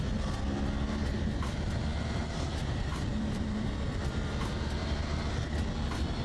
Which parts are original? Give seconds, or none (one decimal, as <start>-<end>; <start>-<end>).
0.0-1.0; 1.7-2.6; 3.7-6.2